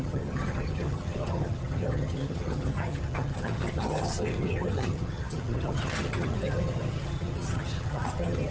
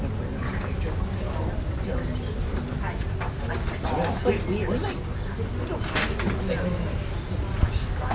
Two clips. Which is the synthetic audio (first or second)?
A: first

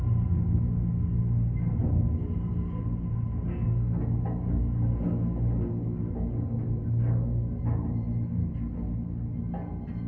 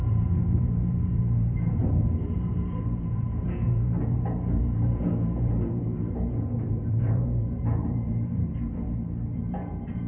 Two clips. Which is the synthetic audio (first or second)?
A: second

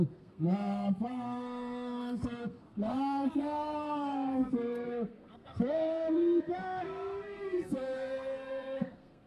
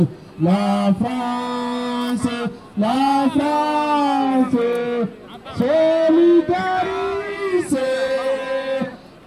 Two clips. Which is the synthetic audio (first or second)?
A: first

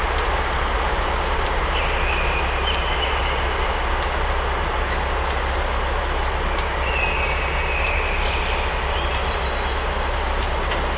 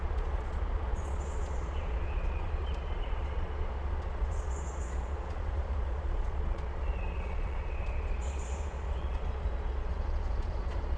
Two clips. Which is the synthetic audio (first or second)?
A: second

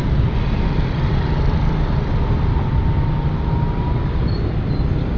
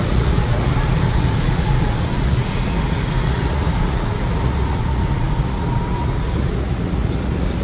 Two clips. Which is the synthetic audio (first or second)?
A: second